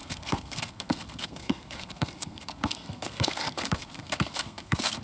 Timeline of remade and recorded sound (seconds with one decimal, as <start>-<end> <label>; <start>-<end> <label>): 0.0-5.0 remade

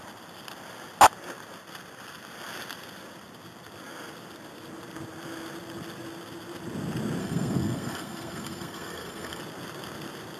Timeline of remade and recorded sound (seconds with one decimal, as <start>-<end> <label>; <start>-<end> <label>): 0.0-7.2 recorded; 7.2-9.4 remade; 9.4-10.4 recorded

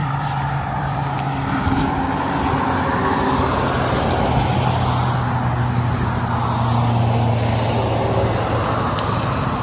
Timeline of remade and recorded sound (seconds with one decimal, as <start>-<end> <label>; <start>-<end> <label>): 0.0-1.0 remade; 1.0-9.6 recorded

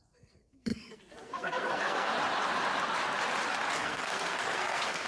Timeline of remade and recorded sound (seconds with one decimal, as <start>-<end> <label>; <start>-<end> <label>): 0.0-2.1 remade; 2.1-3.7 recorded; 3.7-5.1 remade